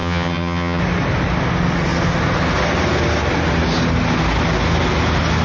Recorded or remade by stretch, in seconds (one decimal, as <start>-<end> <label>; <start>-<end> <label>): 0.0-0.8 remade; 0.8-5.4 recorded